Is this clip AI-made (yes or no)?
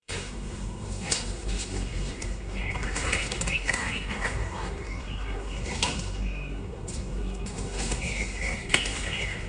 yes